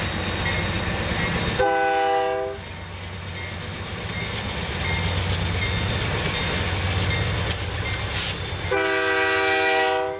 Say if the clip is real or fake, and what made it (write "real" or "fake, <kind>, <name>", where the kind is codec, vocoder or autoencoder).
real